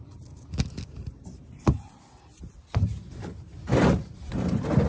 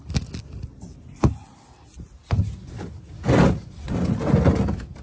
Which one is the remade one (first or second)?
first